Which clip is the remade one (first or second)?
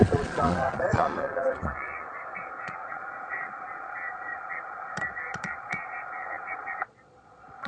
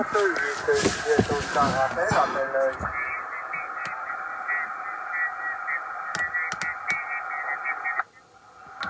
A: first